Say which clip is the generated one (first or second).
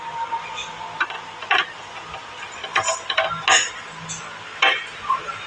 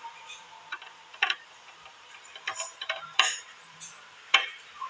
second